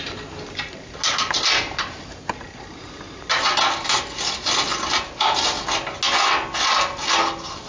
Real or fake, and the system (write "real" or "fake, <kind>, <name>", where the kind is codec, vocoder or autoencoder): real